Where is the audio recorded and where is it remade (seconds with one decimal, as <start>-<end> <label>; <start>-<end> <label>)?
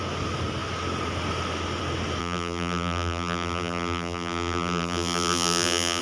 0.0-2.2 recorded; 2.2-6.0 remade